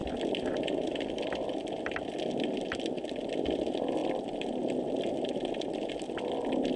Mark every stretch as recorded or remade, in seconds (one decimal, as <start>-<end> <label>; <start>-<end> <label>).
0.0-6.8 recorded